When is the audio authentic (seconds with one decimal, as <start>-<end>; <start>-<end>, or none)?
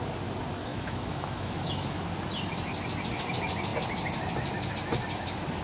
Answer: 0.0-0.7; 2.1-5.6